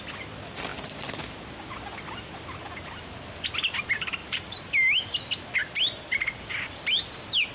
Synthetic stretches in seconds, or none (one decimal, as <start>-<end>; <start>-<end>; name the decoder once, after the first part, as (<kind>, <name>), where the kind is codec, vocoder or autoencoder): 4.2-4.7 (vocoder, BigVGAN v2)